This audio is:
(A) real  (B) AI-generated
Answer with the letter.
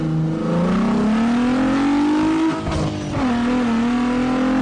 A